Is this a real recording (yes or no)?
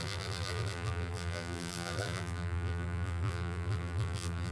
no